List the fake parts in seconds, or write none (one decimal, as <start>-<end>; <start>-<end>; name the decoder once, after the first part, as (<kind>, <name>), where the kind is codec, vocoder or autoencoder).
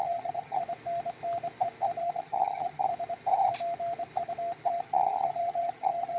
0.0-0.6 (vocoder, HiFi-GAN); 2.0-2.9; 4.7-6.2